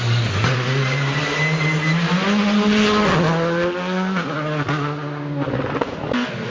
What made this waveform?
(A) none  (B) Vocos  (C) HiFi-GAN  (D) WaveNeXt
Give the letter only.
A